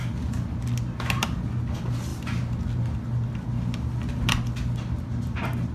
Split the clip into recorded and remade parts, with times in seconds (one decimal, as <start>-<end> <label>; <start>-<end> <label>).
0.0-5.7 recorded